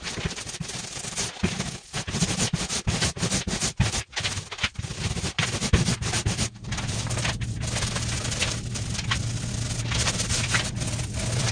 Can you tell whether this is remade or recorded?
recorded